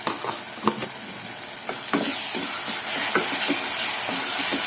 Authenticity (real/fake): real